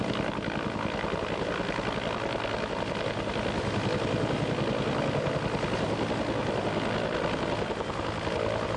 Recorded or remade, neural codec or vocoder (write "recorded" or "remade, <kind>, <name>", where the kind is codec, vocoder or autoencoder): recorded